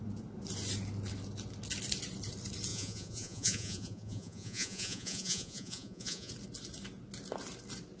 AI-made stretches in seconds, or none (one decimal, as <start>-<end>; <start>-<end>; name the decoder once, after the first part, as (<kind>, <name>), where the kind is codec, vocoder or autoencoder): 2.7-6.3 (vocoder, Vocos)